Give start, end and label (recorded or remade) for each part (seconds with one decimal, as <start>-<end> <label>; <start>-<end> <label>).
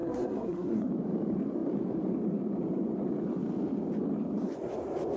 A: 0.0-0.9 remade; 0.9-5.2 recorded